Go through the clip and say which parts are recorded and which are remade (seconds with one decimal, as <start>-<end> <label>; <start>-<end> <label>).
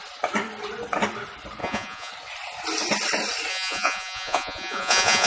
0.0-1.6 recorded; 1.6-2.1 remade; 2.1-3.5 recorded; 3.5-5.3 remade